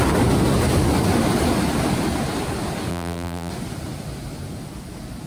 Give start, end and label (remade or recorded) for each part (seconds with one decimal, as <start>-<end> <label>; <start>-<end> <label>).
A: 0.0-2.9 recorded; 2.9-3.5 remade; 3.5-5.3 recorded